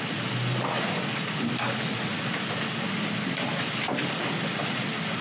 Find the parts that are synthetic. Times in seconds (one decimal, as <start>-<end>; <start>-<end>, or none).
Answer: none